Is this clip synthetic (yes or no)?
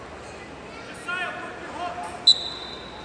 no